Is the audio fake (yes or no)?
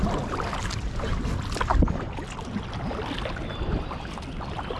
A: no